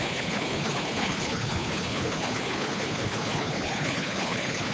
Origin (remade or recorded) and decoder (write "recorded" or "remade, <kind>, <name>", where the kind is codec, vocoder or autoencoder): remade, codec, HILCodec